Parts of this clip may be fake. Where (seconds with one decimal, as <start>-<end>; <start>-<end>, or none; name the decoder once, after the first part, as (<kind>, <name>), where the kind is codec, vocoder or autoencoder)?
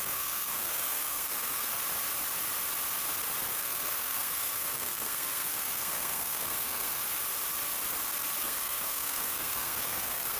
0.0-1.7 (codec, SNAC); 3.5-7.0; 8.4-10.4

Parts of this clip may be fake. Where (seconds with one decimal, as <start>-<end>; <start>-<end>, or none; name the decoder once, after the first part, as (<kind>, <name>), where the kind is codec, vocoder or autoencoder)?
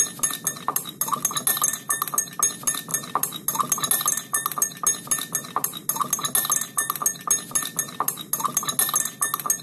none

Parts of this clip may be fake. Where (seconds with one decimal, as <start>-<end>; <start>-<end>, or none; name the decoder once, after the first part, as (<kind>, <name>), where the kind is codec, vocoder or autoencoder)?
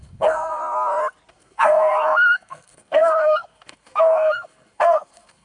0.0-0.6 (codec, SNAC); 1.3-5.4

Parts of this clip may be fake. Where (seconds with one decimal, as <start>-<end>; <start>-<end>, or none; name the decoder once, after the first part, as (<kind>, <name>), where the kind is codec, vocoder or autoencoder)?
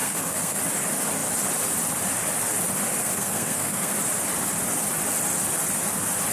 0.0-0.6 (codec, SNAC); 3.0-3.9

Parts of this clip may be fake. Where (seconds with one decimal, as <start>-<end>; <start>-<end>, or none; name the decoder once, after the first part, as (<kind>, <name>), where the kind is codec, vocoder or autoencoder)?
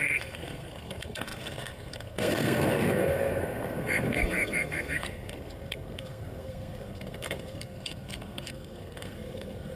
0.0-9.8 (codec, SNAC)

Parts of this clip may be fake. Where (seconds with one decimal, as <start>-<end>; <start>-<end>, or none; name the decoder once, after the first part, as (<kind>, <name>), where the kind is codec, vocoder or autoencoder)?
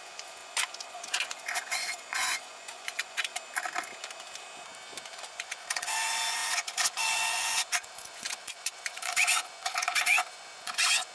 0.0-3.3 (vocoder, Vocos); 5.3-11.1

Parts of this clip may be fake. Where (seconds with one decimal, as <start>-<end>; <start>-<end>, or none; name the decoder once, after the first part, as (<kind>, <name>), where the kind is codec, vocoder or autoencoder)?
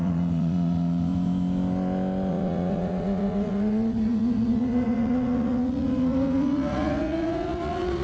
0.0-1.1 (vocoder, Vocos); 2.3-8.0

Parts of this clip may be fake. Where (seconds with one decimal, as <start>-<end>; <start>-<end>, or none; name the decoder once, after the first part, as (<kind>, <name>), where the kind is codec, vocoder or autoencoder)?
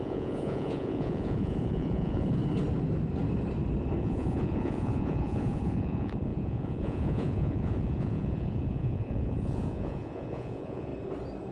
0.0-2.4 (vocoder, Vocos); 4.0-10.9